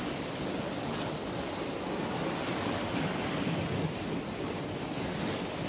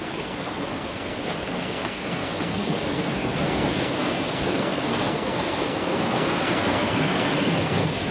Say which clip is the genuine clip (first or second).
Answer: first